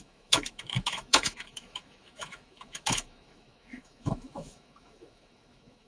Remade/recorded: remade